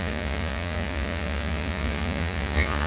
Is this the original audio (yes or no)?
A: no